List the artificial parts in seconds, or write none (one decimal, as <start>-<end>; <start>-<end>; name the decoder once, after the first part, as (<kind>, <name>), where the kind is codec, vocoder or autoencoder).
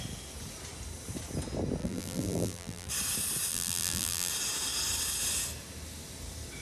1.8-2.9 (vocoder, BigVGAN v2); 3.5-4.3